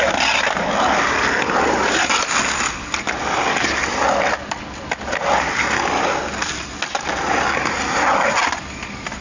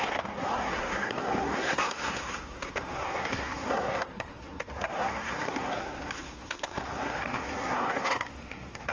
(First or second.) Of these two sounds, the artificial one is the second